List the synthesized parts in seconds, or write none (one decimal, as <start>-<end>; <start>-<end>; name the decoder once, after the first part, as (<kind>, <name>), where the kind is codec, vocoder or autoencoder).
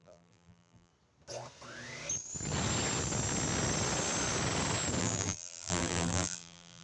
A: 0.0-0.9 (vocoder, BigVGAN v2); 5.0-6.8